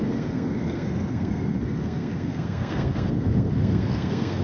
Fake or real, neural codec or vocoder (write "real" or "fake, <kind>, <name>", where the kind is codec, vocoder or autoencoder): fake, codec, SNAC